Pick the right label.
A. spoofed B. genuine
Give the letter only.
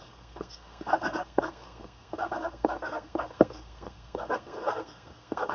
A